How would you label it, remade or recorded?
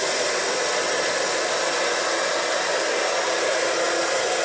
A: recorded